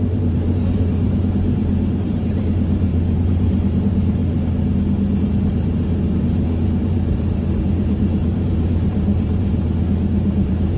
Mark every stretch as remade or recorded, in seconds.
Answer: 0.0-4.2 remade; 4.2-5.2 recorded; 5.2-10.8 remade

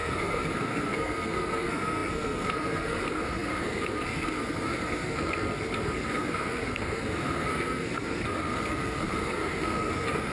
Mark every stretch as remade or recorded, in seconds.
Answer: 0.0-10.3 remade